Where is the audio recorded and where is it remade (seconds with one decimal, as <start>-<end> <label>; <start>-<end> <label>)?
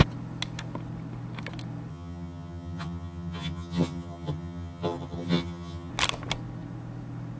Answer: 0.0-1.9 recorded; 1.9-5.9 remade; 5.9-7.4 recorded